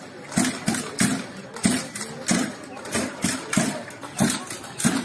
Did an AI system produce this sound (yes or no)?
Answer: no